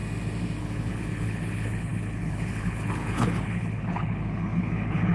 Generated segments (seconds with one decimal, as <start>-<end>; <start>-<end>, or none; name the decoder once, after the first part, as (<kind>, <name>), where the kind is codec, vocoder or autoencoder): 0.6-5.1 (codec, HILCodec)